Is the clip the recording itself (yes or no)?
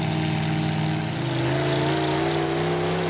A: yes